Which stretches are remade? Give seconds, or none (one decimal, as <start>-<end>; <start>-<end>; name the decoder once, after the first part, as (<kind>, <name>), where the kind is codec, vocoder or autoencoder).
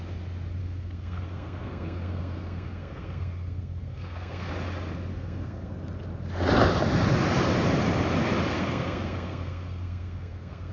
0.6-4.5 (codec, SNAC); 5.1-5.7; 8.5-10.7